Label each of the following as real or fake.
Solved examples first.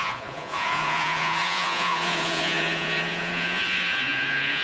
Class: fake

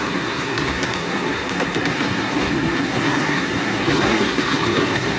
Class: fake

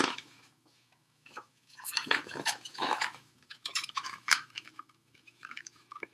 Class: fake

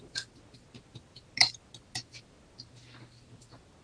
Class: real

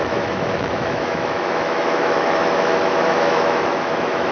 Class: fake